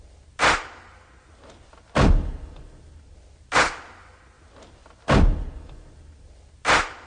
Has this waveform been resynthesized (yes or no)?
no